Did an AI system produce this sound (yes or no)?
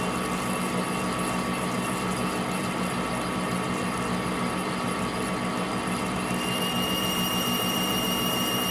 no